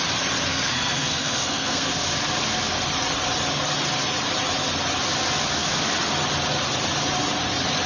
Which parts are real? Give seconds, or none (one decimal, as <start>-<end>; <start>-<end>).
0.0-0.5; 1.9-7.9